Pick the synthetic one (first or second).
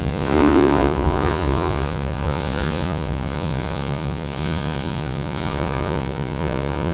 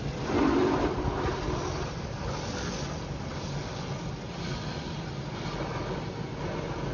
first